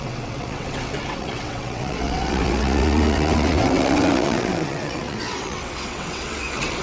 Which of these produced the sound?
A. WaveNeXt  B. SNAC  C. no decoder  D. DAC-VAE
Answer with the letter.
A